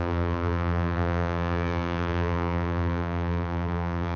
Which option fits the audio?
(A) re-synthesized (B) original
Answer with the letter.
A